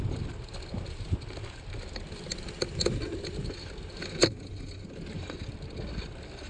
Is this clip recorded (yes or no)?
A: yes